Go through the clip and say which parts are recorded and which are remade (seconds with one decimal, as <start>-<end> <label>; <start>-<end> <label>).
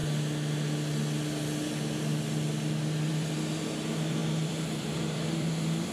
0.0-3.1 recorded; 3.1-5.9 remade